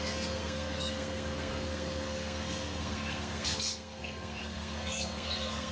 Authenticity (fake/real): fake